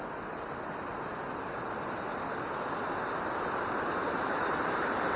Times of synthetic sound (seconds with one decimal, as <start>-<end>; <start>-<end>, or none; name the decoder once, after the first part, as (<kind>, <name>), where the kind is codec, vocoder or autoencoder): 0.0-0.9 (vocoder, BigVGAN v2); 4.0-5.2